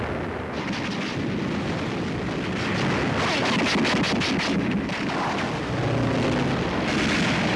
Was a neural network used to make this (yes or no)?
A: no